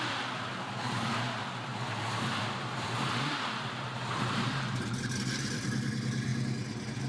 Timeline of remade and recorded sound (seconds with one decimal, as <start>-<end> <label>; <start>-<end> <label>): 0.0-1.7 remade; 1.7-2.4 recorded; 2.4-6.3 remade; 6.3-7.1 recorded